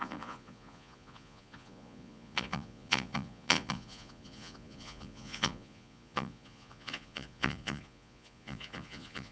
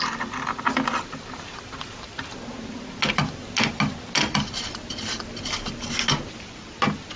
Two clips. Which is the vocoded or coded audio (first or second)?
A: first